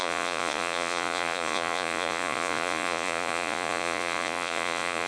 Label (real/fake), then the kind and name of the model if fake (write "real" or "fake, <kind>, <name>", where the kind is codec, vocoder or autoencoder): fake, vocoder, Vocos